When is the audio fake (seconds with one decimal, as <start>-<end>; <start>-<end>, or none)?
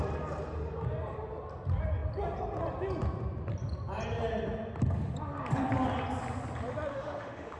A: 6.9-7.6